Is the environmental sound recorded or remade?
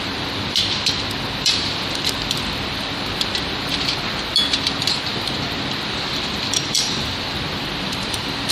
remade